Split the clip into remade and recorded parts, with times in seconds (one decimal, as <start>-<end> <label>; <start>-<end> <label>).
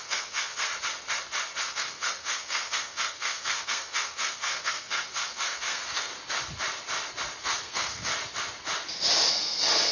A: 0.0-0.7 remade; 0.7-1.6 recorded; 1.6-6.1 remade; 6.1-7.4 recorded; 7.4-8.1 remade; 8.1-9.3 recorded; 9.3-9.9 remade